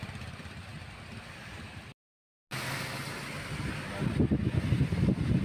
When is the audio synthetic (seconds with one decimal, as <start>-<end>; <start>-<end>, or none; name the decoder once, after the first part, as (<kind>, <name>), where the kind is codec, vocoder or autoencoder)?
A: 0.0-0.7 (vocoder, BigVGAN v2); 1.4-2.4; 4.1-5.4